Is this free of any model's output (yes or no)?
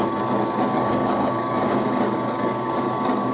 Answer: no